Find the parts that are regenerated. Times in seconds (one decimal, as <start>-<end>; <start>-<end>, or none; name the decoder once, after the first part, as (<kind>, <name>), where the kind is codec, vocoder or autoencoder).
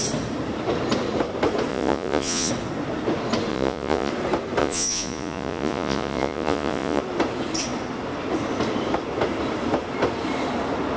1.7-2.5 (vocoder, Vocos); 3.5-4.1; 4.6-7.0